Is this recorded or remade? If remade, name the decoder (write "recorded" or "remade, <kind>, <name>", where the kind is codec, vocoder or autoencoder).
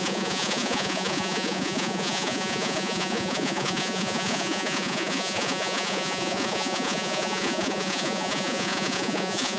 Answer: remade, vocoder, Vocos